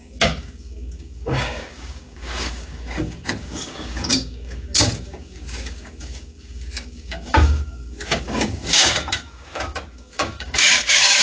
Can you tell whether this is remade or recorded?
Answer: remade